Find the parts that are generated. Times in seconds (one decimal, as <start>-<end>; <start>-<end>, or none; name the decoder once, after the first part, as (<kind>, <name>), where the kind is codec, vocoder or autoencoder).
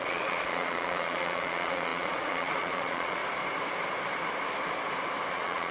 0.0-3.2 (vocoder, Vocos); 5.3-5.7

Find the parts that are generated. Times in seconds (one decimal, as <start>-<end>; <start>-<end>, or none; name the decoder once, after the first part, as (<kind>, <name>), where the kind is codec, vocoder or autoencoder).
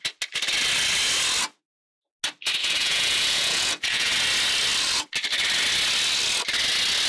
2.6-4.1 (vocoder, Vocos)